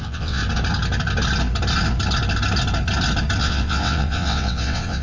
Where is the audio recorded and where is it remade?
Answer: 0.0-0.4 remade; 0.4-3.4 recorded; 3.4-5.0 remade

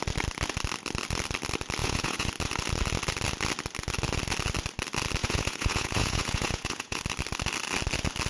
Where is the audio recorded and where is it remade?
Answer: 0.0-1.8 recorded; 1.8-2.3 remade; 2.3-5.2 recorded; 5.2-7.0 remade; 7.0-8.3 recorded

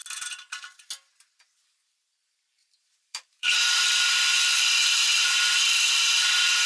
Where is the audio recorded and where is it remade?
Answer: 0.0-2.6 recorded; 2.6-6.7 remade

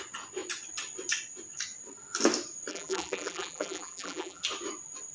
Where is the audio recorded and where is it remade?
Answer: 0.0-2.7 recorded; 2.7-4.4 remade; 4.4-5.1 recorded

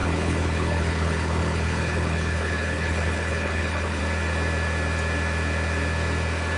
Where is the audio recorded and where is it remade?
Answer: 0.0-4.0 remade; 4.0-6.6 recorded

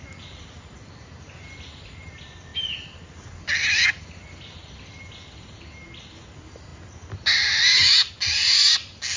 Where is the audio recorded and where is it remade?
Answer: 0.0-9.2 recorded

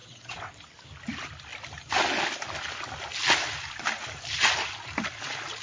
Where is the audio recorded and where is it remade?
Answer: 0.0-0.5 remade; 0.5-5.6 recorded

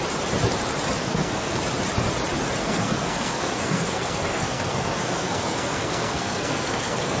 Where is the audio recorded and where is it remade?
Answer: 0.0-1.0 recorded; 1.0-1.6 remade; 1.6-2.6 recorded; 2.6-7.2 remade